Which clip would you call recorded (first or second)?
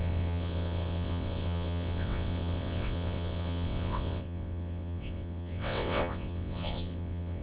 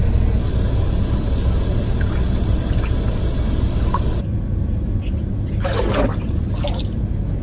second